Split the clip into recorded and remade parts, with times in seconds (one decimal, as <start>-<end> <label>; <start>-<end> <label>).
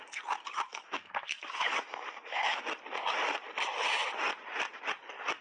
0.0-0.7 recorded; 0.7-2.6 remade; 2.6-5.4 recorded